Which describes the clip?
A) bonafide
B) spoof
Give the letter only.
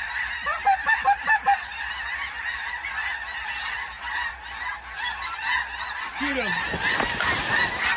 B